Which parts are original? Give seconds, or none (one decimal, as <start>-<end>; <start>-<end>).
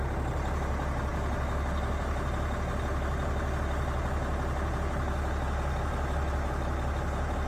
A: 0.0-7.5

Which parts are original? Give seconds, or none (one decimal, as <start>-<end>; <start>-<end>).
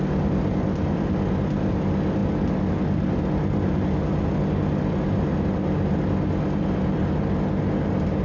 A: 0.0-8.2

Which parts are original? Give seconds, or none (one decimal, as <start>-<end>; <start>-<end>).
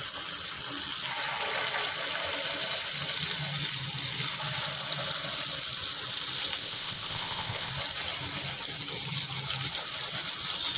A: 0.0-6.6; 7.7-10.8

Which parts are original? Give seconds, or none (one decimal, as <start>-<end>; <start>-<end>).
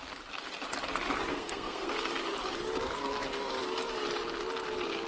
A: 0.0-1.3; 1.9-5.1